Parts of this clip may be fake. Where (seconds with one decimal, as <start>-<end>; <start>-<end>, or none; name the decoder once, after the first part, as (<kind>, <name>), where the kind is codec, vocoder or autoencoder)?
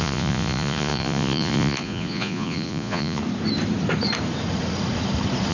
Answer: 0.0-3.2 (vocoder, Vocos)